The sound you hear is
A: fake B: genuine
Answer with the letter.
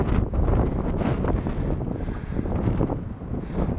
B